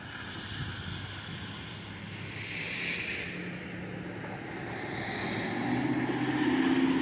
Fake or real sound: real